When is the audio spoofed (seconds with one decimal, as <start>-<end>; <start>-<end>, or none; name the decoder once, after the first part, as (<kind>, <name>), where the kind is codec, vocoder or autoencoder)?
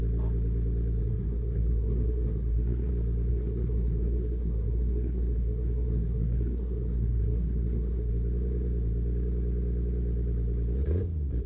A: 1.0-2.9 (codec, SNAC); 3.3-8.1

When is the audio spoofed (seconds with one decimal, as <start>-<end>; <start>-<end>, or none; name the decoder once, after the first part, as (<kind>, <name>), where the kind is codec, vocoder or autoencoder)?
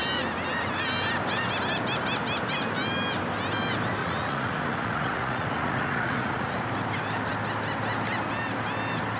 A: 4.0-6.6 (vocoder, Vocos)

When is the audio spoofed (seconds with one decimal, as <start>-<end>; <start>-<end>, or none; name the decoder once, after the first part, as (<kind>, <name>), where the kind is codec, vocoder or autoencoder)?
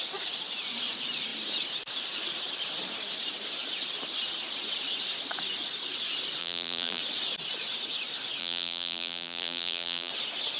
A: 6.4-7.0 (vocoder, BigVGAN v2); 8.4-10.1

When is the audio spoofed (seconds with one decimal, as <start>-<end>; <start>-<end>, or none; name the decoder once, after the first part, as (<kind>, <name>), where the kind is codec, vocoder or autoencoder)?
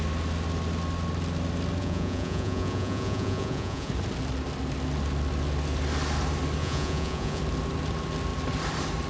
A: 1.8-3.9 (vocoder, Vocos); 6.6-7.4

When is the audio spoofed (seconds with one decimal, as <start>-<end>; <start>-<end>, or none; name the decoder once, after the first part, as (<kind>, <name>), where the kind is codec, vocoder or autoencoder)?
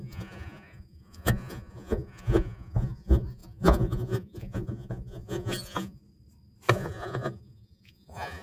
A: 0.0-6.0 (vocoder, Vocos); 6.7-8.4